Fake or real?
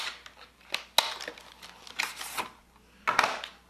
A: real